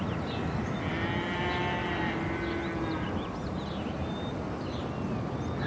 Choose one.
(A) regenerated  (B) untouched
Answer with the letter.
B